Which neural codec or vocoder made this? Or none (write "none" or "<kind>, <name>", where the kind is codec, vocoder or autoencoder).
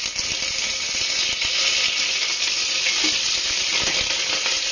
none